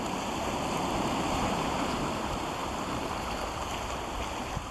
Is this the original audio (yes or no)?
yes